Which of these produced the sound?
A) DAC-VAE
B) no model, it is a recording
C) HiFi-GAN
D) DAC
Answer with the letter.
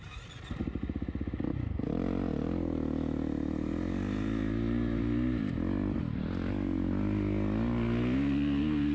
B